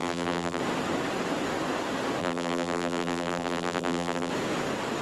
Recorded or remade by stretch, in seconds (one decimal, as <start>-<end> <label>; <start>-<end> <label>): 0.0-0.6 remade; 0.6-2.2 recorded; 2.2-4.3 remade; 4.3-5.0 recorded